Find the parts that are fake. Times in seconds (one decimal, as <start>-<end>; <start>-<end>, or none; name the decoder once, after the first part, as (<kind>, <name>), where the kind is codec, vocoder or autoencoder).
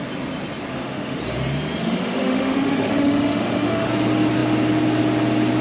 0.7-1.2 (autoencoder, DAC-VAE); 1.8-3.9